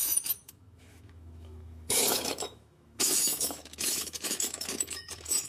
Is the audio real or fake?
fake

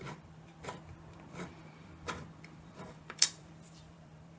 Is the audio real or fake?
fake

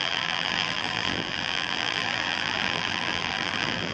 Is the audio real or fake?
fake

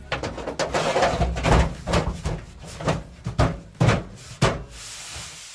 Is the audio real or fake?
real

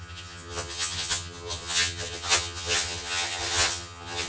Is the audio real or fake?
fake